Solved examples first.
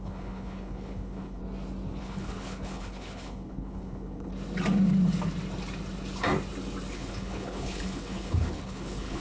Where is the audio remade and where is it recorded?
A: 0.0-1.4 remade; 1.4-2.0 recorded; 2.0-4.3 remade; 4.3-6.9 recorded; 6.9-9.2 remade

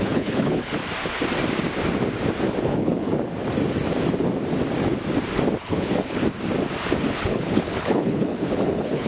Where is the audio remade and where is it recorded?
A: 0.0-0.8 remade; 0.8-2.6 recorded; 2.6-3.1 remade; 3.1-5.6 recorded; 5.6-6.2 remade; 6.2-7.1 recorded; 7.1-9.1 remade

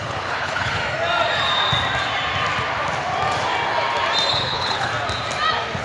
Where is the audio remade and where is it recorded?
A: 0.0-0.8 remade; 0.8-4.3 recorded; 4.3-4.9 remade; 4.9-5.8 recorded

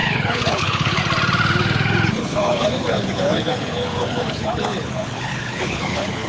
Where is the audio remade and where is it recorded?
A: 0.0-1.0 remade; 1.0-2.2 recorded; 2.2-6.3 remade

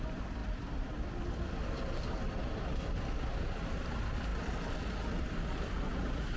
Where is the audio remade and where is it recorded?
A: 0.0-6.4 recorded

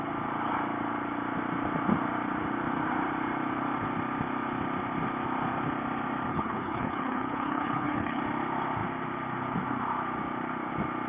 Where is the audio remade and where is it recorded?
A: 0.0-6.3 recorded; 6.3-8.2 remade; 8.2-11.1 recorded

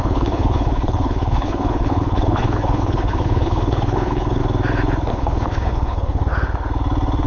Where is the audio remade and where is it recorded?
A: 0.0-4.4 remade; 4.4-5.1 recorded; 5.1-6.2 remade; 6.2-7.3 recorded

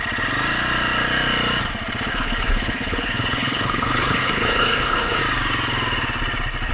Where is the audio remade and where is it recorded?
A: 0.0-2.1 recorded; 2.1-5.2 remade; 5.2-6.7 recorded